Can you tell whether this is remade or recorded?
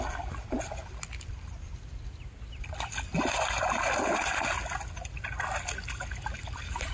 recorded